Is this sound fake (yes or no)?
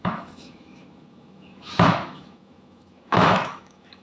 yes